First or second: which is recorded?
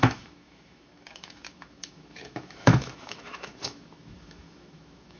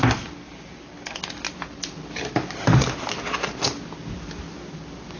second